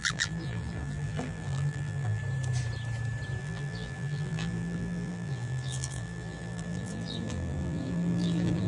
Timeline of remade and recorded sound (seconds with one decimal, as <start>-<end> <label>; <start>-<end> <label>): 0.0-2.2 remade; 2.2-3.4 recorded; 3.4-8.7 remade